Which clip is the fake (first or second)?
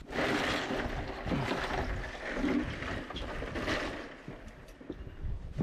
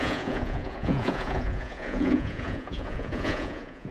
second